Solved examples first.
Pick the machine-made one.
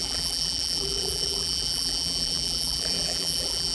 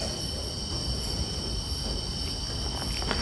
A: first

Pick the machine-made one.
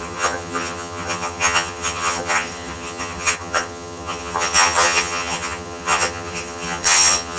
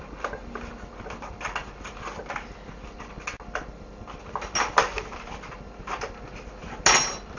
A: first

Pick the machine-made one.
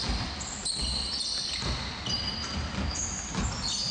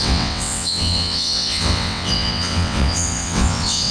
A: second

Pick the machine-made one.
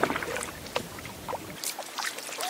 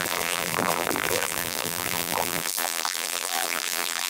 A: second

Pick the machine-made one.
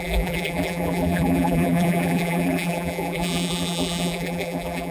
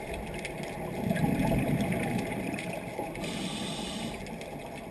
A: first